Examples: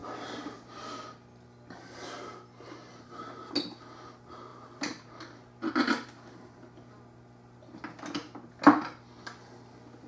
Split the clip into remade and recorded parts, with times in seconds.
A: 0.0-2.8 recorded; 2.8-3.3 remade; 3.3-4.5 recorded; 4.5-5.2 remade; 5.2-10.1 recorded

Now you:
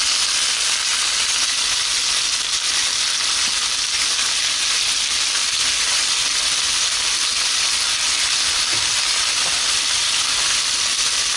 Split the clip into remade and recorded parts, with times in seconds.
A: 0.0-0.9 remade; 0.9-5.8 recorded; 5.8-7.3 remade; 7.3-8.3 recorded; 8.3-11.4 remade

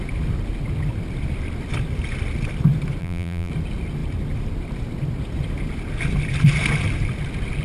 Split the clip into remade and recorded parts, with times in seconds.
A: 0.0-3.0 recorded; 3.0-3.5 remade; 3.5-7.6 recorded

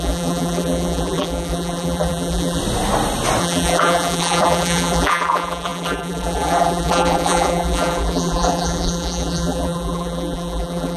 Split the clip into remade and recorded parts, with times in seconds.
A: 0.0-2.6 remade; 2.6-3.4 recorded; 3.4-11.0 remade

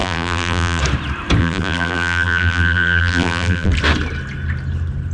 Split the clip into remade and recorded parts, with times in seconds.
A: 0.0-0.8 remade; 0.8-1.4 recorded; 1.4-3.7 remade; 3.7-5.1 recorded

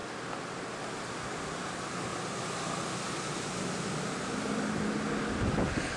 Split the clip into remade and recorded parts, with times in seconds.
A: 0.0-6.0 recorded